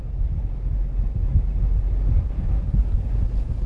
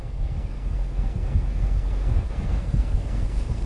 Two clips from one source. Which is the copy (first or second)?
second